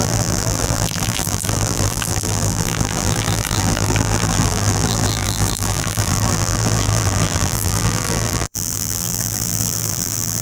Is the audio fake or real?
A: fake